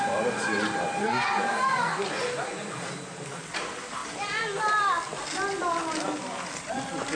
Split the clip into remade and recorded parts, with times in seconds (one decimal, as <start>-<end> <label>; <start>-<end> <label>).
0.0-1.0 recorded; 1.0-2.0 remade; 2.0-7.2 recorded